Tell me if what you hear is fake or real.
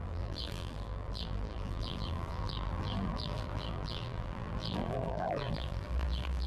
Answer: fake